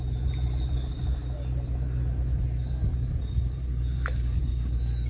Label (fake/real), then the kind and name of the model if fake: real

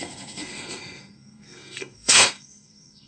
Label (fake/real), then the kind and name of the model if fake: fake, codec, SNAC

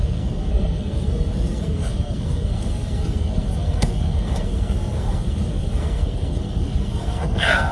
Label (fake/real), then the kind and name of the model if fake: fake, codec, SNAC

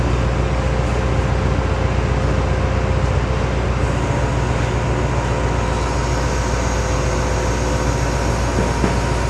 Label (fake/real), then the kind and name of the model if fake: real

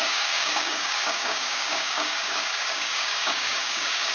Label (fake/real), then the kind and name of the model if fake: fake, codec, DAC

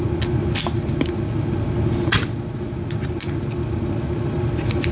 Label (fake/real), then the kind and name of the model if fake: real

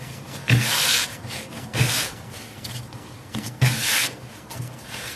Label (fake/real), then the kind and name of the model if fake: fake, codec, SNAC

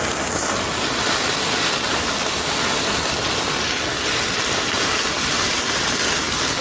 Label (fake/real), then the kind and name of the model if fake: real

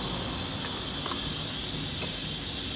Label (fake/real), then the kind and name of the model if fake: real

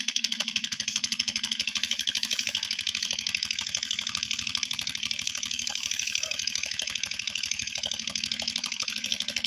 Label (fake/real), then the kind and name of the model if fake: fake, codec, SNAC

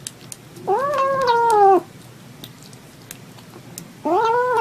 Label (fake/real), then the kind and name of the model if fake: real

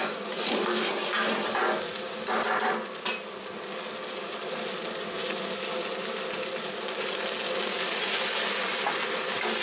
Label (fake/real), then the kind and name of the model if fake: real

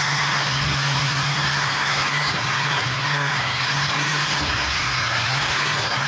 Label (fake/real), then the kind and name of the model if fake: fake, codec, SNAC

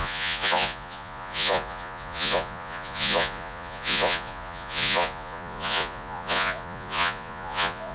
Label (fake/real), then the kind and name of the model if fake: fake, vocoder, Vocos